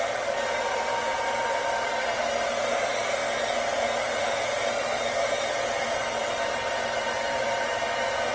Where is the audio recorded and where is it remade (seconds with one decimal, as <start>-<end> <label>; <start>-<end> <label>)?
0.0-8.3 recorded